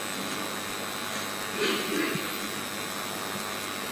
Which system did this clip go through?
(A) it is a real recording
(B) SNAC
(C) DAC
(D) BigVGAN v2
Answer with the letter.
A